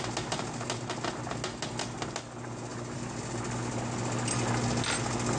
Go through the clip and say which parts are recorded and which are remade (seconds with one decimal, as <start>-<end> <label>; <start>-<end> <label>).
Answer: 0.0-2.7 recorded; 2.7-3.3 remade; 3.3-5.4 recorded

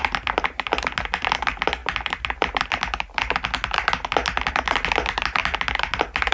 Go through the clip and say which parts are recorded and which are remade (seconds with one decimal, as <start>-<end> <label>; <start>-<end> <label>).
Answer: 0.0-6.3 recorded